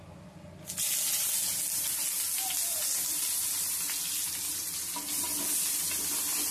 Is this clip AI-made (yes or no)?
no